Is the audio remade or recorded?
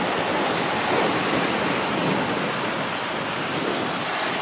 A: recorded